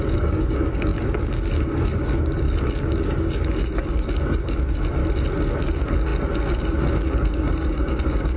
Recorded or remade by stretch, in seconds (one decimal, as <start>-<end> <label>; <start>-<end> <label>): 0.0-5.0 remade; 5.0-5.6 recorded; 5.6-8.4 remade